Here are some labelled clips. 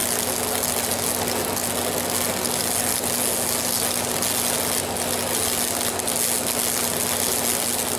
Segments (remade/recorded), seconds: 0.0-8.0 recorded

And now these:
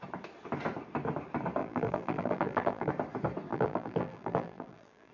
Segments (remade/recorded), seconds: 0.0-1.6 recorded; 1.6-2.9 remade; 2.9-3.5 recorded; 3.5-5.1 remade

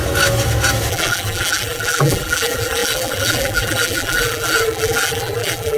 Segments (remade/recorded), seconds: 0.0-0.9 recorded; 0.9-5.8 remade

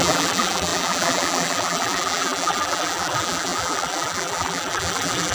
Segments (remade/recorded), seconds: 0.0-5.3 remade

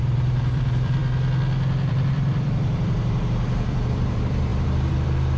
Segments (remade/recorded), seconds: 0.0-1.0 remade; 1.0-1.9 recorded; 1.9-5.4 remade